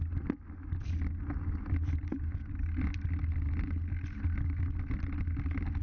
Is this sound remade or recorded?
recorded